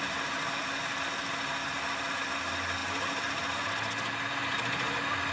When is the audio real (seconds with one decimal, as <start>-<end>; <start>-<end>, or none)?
0.0-5.3